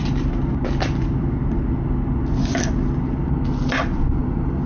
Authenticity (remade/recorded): recorded